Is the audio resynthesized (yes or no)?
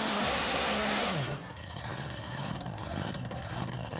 yes